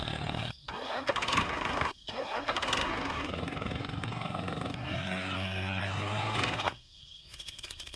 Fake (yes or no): yes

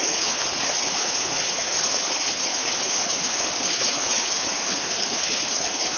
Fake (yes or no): yes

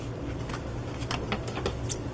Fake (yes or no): no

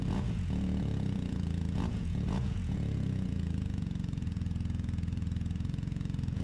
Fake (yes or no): yes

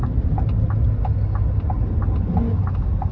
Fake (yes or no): no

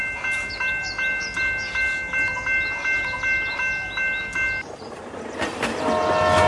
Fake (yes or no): no